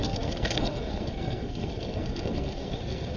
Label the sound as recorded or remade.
remade